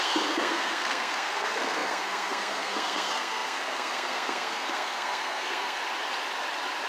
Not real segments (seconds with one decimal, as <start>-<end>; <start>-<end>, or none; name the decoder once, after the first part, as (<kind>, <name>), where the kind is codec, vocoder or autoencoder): 0.0-5.8 (codec, SNAC)